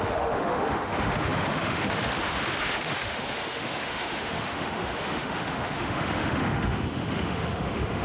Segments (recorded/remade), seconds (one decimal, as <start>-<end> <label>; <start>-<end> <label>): 0.0-8.0 remade